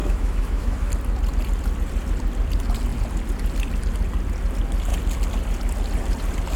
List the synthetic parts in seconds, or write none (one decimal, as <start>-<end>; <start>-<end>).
0.0-0.9